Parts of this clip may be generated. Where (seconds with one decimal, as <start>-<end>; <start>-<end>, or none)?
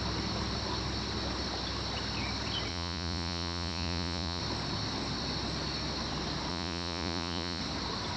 2.7-4.4; 6.5-7.6